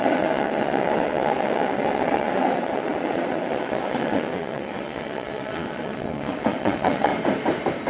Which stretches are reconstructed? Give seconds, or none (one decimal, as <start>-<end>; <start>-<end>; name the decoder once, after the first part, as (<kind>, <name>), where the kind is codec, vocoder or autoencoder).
0.0-7.1 (vocoder, WaveNeXt)